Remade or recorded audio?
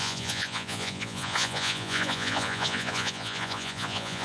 remade